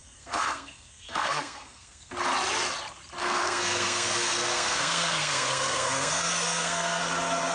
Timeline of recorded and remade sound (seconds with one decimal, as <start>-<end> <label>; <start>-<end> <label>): 0.0-2.1 remade; 2.1-3.2 recorded; 3.2-7.0 remade; 7.0-7.5 recorded